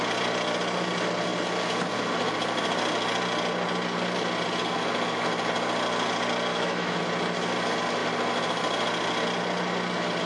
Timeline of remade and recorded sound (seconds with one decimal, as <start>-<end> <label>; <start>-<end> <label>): 0.0-6.5 recorded; 6.5-7.0 remade; 7.0-10.3 recorded